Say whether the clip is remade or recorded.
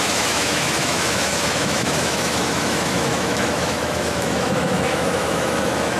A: remade